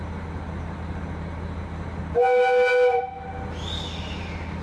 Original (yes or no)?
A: yes